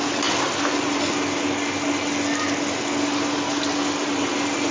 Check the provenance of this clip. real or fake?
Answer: real